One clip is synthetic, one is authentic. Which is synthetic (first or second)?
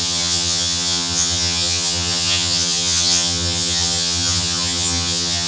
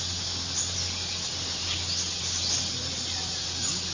first